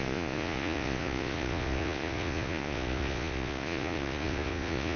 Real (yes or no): no